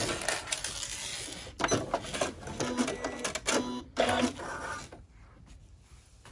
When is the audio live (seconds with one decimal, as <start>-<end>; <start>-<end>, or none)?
0.0-6.3